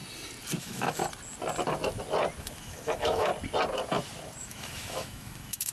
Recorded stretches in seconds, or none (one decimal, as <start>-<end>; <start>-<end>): 0.0-0.6; 1.0-2.4; 3.3-4.4

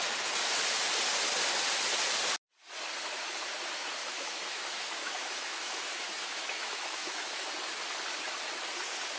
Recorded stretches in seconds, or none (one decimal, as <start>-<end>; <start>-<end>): 0.0-4.0; 7.5-9.2